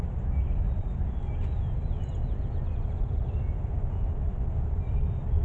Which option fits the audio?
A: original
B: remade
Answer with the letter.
A